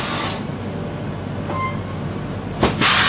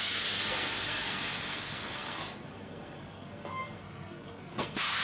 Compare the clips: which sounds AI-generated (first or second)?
second